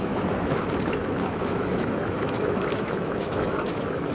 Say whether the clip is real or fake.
fake